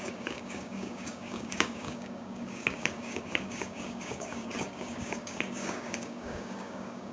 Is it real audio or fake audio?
fake